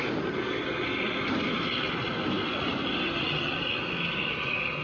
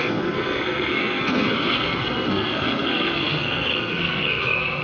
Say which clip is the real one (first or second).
first